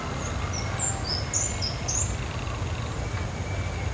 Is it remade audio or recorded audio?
recorded